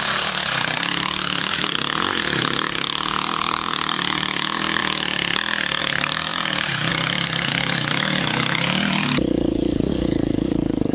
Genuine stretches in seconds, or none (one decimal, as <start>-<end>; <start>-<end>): 4.8-5.8